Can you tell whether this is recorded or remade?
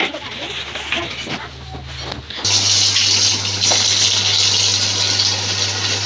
recorded